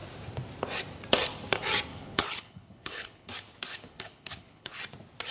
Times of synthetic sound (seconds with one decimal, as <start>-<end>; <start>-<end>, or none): 1.9-3.3; 3.7-4.8